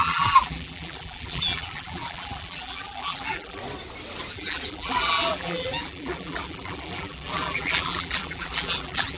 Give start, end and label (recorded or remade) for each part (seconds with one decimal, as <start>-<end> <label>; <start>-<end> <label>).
0.0-3.6 remade; 3.6-4.3 recorded; 4.3-9.2 remade